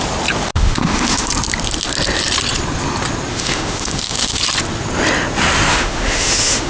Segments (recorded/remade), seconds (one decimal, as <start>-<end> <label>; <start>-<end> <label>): 0.0-0.5 recorded; 0.5-1.3 remade; 1.3-3.3 recorded; 3.3-4.4 remade; 4.4-5.7 recorded; 5.7-6.7 remade